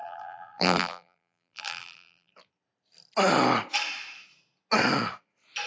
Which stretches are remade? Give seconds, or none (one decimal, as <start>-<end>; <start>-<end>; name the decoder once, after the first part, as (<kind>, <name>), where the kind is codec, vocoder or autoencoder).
0.0-2.3 (vocoder, BigVGAN v2)